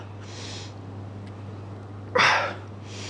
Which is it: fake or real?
real